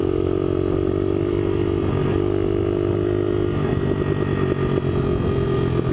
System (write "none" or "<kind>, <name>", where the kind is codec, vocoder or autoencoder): none